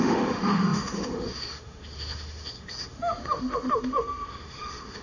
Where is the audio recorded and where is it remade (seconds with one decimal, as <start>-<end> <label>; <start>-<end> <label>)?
0.0-5.0 remade